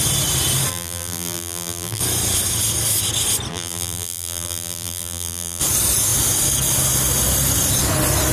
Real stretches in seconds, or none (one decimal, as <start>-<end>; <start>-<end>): 0.0-0.7; 2.0-3.5; 5.6-8.3